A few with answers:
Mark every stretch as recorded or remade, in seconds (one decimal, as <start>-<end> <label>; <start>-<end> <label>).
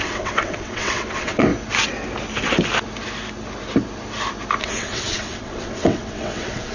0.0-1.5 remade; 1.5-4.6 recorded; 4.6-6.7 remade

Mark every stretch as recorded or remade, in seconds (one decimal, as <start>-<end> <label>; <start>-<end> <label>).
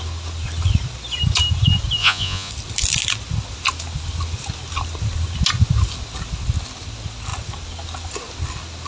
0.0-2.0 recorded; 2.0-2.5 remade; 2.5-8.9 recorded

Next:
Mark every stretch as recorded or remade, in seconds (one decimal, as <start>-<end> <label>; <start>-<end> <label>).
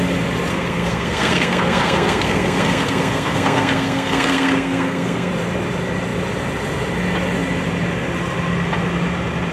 0.0-0.5 recorded; 0.5-5.3 remade; 5.3-9.5 recorded